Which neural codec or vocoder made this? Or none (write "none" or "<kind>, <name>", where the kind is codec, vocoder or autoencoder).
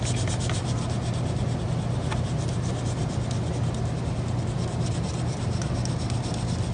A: none